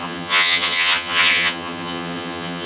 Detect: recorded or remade remade